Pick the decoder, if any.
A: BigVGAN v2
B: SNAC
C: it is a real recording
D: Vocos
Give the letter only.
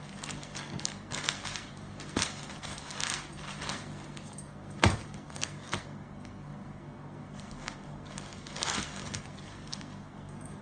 B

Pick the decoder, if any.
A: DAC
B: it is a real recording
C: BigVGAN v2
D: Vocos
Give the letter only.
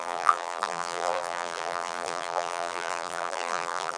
C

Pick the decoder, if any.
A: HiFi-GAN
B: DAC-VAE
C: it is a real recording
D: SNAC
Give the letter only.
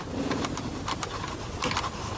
C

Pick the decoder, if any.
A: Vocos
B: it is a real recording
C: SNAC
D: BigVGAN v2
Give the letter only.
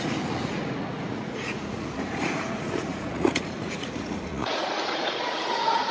A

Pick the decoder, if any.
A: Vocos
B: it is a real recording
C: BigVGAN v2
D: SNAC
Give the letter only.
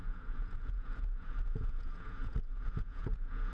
A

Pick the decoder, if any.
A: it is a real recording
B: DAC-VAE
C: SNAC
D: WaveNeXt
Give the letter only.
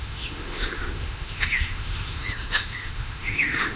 B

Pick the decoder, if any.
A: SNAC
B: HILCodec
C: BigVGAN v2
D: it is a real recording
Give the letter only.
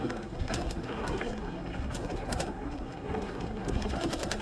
A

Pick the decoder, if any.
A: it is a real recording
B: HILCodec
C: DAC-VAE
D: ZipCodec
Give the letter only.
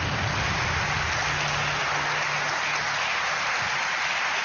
A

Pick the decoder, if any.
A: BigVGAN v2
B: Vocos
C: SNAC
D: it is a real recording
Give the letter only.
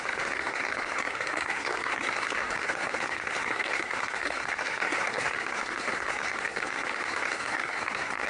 C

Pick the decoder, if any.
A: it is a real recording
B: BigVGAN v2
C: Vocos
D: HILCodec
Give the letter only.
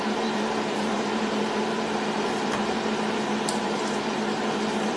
B